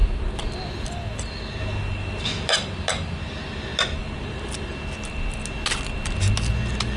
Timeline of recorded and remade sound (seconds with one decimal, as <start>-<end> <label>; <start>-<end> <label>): 0.0-7.0 recorded